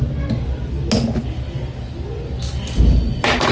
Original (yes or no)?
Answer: yes